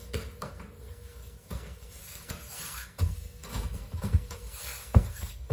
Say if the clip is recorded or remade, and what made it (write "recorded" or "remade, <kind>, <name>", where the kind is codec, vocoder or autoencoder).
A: remade, codec, SNAC